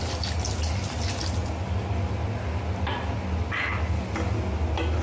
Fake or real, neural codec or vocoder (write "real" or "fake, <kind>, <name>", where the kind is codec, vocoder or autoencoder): real